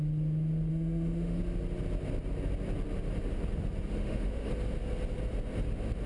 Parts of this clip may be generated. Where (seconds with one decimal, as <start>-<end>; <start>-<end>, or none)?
0.7-1.4; 4.0-4.5